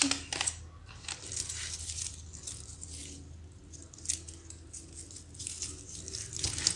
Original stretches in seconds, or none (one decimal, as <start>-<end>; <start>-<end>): 0.0-6.8